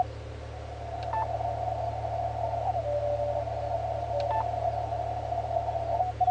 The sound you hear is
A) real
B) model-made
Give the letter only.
A